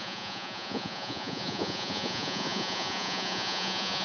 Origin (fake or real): fake